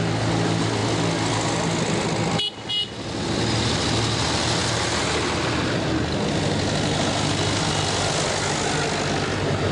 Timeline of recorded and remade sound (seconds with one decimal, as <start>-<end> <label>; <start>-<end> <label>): 0.0-9.7 recorded